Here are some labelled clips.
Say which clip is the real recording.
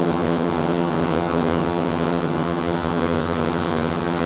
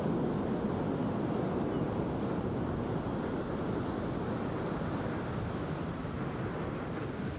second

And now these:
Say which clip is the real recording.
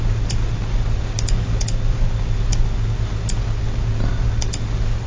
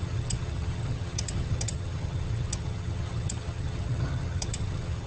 first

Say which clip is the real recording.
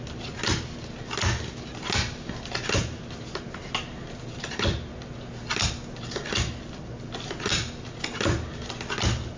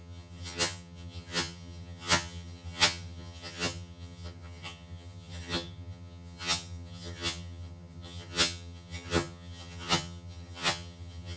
first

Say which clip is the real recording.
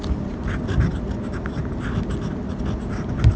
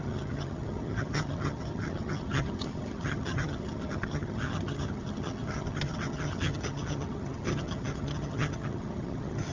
first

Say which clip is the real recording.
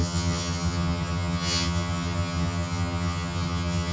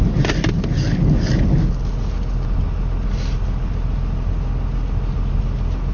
second